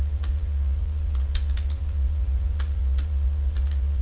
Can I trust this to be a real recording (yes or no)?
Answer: no